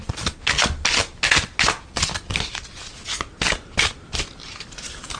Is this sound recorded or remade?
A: recorded